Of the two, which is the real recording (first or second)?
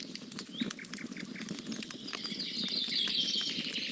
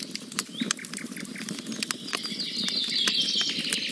second